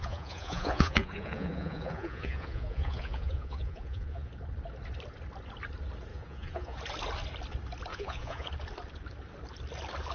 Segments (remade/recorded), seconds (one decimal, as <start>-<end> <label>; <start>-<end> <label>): 0.0-4.3 remade; 4.3-6.1 recorded; 6.1-6.8 remade; 6.8-7.9 recorded; 7.9-8.5 remade; 8.5-10.1 recorded